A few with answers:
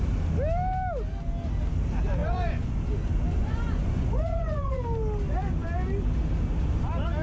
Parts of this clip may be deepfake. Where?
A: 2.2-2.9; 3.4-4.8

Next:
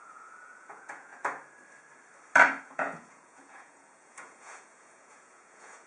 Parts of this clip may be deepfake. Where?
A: 0.0-1.1; 2.6-5.9